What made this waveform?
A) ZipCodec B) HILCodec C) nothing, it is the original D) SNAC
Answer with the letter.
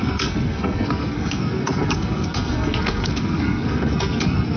D